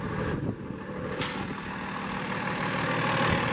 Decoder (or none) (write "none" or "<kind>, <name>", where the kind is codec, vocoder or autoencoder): none